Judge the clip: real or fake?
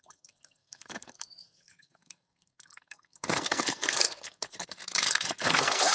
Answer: fake